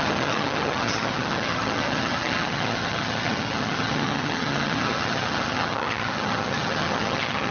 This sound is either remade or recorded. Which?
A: remade